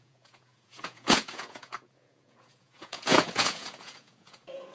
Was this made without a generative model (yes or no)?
no